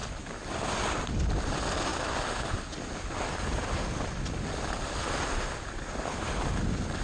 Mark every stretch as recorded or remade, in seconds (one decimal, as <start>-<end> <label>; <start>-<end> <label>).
0.0-7.0 recorded